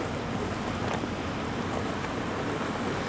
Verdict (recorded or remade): remade